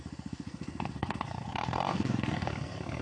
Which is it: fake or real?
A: fake